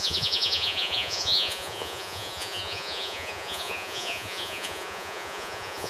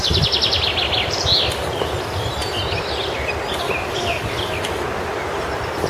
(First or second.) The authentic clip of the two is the second